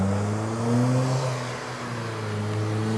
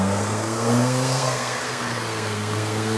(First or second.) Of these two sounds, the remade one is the second